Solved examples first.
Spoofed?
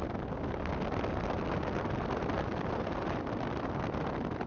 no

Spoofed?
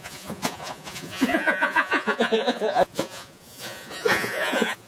yes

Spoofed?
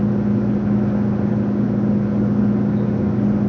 no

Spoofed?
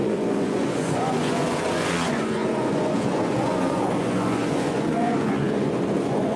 yes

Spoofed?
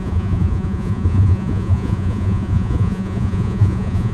yes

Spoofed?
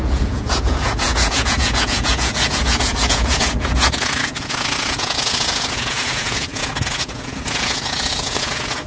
yes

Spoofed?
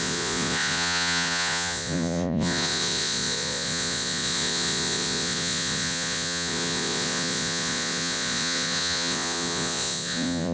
yes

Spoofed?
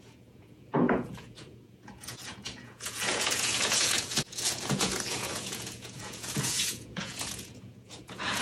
yes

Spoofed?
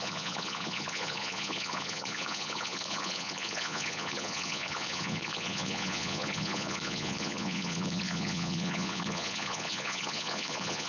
yes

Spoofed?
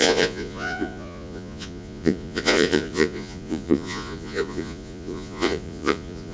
yes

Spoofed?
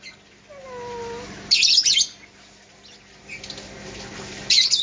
no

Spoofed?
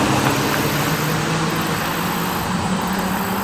no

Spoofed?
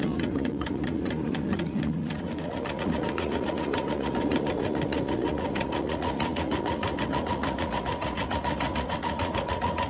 yes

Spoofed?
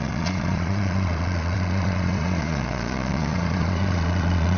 yes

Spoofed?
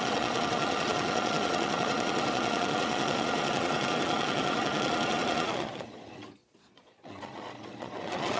yes